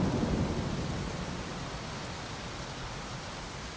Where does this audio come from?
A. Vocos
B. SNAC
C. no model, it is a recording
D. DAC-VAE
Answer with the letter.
C